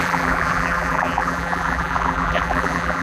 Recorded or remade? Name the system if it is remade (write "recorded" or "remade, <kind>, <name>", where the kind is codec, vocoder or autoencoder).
remade, vocoder, BigVGAN v2